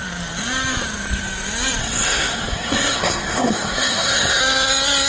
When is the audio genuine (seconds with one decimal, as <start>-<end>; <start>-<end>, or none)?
0.0-1.8; 4.4-5.1